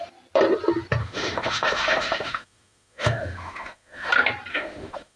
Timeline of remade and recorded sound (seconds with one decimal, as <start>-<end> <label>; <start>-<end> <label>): 0.0-1.0 recorded; 1.0-4.1 remade; 4.1-4.5 recorded; 4.5-5.2 remade